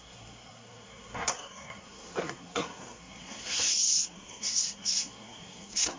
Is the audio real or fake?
fake